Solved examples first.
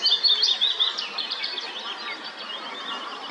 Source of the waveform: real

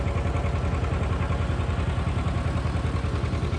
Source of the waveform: real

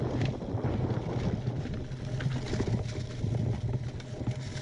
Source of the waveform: real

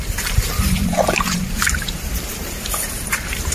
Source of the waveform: fake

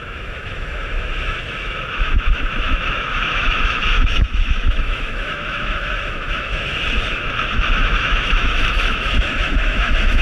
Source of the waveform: fake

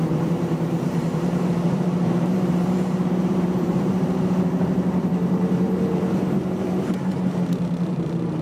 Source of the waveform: fake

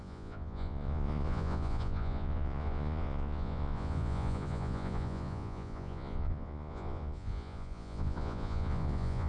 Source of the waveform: fake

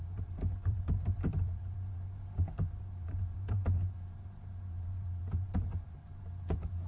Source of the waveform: fake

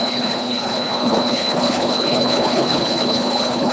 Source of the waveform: fake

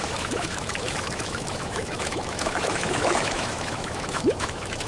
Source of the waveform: fake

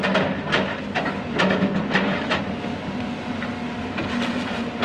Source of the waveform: real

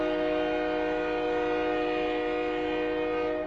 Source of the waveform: real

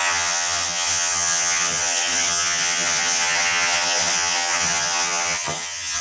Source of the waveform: fake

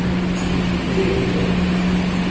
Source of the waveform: real